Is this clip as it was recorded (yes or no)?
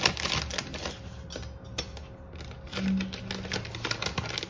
yes